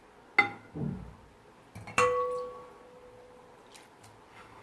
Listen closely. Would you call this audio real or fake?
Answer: real